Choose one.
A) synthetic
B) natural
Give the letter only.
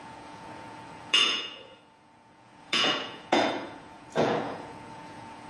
A